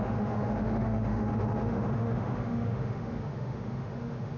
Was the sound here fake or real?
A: fake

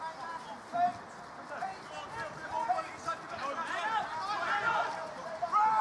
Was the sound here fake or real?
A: real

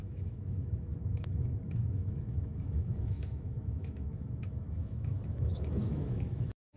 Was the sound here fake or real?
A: fake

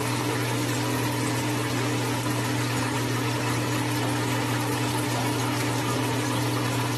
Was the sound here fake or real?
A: real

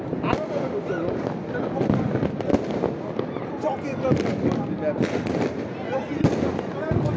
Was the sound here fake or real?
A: real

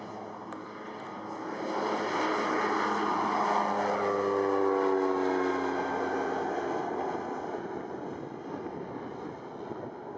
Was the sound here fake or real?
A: real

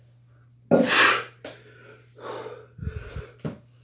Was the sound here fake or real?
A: real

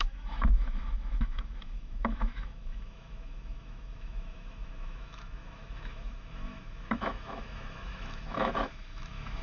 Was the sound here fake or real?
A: fake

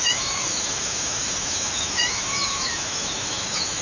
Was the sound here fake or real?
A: fake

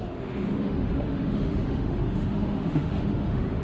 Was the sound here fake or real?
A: fake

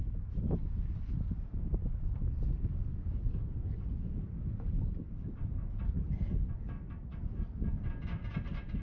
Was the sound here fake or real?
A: real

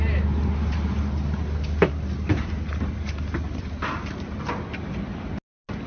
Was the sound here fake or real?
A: real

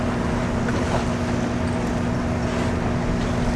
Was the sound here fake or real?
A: real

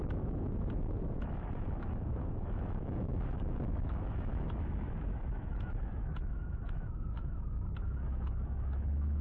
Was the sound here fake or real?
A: fake